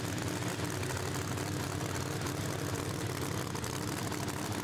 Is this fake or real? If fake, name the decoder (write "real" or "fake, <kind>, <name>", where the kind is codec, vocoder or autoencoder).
real